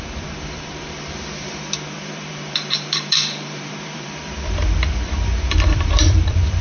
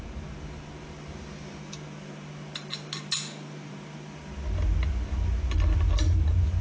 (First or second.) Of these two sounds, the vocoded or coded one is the first